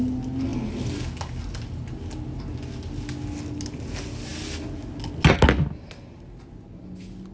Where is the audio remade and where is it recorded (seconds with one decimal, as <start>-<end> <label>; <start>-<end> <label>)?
0.0-7.3 recorded